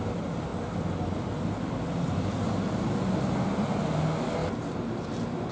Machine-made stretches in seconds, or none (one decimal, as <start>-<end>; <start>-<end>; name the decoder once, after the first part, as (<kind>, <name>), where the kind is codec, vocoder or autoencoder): none